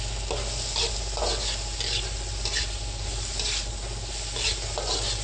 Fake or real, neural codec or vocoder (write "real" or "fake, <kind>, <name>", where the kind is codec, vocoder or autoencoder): real